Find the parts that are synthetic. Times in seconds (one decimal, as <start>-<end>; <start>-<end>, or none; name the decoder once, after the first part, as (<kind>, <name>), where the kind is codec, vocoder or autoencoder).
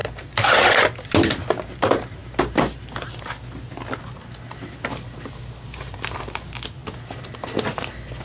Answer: none